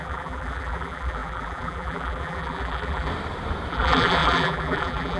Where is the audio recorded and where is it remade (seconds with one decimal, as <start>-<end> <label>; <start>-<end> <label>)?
0.0-3.1 remade; 3.1-3.7 recorded; 3.7-5.2 remade